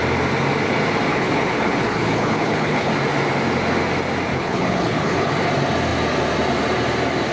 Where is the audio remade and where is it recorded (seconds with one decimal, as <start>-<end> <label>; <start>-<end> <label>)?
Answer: 0.0-1.1 recorded; 1.1-2.9 remade; 2.9-4.3 recorded; 4.3-5.3 remade; 5.3-7.3 recorded